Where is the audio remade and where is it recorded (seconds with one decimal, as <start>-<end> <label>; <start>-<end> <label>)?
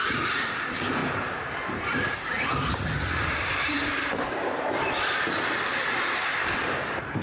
0.0-1.0 recorded; 1.0-5.3 remade; 5.3-7.2 recorded